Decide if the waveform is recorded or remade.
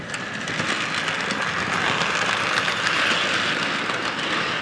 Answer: recorded